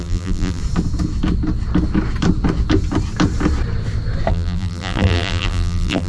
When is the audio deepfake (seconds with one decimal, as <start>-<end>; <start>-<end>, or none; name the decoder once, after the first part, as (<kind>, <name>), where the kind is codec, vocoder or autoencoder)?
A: 0.0-0.6 (vocoder, BigVGAN v2); 4.3-6.1